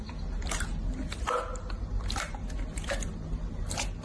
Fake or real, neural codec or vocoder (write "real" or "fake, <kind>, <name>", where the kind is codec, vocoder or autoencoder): real